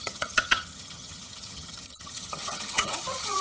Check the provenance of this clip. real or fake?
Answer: fake